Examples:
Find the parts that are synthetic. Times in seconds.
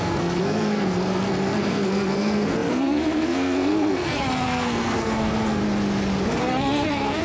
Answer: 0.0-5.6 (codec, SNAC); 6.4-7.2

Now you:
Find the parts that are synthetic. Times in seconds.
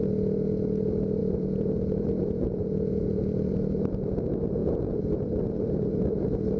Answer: 1.2-3.5 (vocoder, Vocos); 4.6-5.2